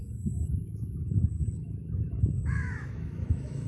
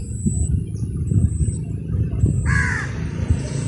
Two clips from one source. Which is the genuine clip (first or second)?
second